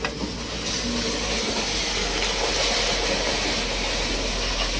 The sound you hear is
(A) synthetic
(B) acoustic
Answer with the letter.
B